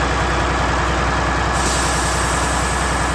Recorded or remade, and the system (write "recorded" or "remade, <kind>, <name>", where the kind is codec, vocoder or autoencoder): recorded